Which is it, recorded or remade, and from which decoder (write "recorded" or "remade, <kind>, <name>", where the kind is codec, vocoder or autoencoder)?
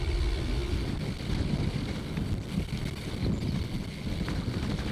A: recorded